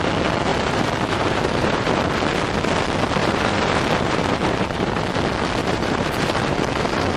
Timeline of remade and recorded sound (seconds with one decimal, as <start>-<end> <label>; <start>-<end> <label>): 0.0-0.5 recorded; 0.5-2.1 remade; 2.1-3.2 recorded; 3.2-5.0 remade; 5.0-5.6 recorded; 5.6-6.6 remade; 6.6-7.2 recorded